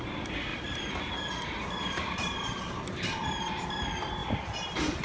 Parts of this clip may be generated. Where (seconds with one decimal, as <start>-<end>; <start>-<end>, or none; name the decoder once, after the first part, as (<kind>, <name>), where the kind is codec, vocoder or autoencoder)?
0.5-3.5 (vocoder, BigVGAN v2); 4.2-5.0